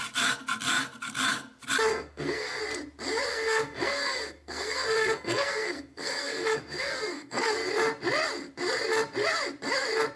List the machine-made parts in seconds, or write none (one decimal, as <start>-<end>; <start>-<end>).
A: 1.9-2.6; 3.3-7.7